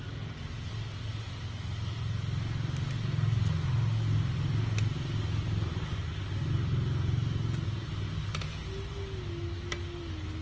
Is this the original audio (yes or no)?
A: yes